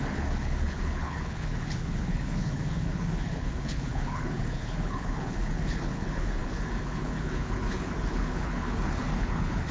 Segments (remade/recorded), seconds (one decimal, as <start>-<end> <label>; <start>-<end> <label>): 0.0-9.7 remade